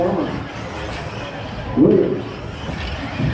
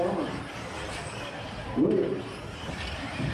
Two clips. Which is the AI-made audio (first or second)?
second